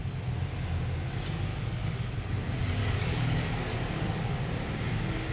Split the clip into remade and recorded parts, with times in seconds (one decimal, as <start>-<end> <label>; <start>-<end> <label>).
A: 0.0-1.5 recorded; 1.5-2.1 remade; 2.1-2.8 recorded; 2.8-4.5 remade; 4.5-5.3 recorded